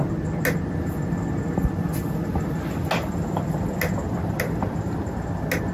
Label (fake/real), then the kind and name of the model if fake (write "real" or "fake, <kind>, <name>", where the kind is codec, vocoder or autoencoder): real